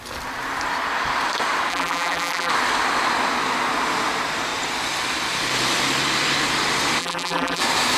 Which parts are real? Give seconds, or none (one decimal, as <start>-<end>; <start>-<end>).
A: 0.0-1.7; 2.5-7.0; 7.6-8.0